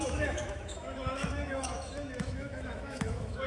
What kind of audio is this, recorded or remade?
remade